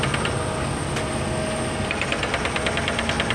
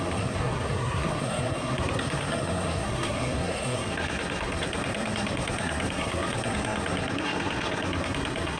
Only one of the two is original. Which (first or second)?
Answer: first